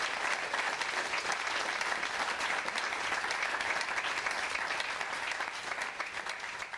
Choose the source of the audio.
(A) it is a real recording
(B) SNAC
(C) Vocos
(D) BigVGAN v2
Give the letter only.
A